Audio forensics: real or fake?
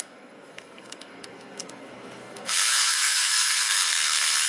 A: fake